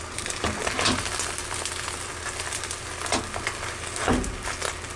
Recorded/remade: recorded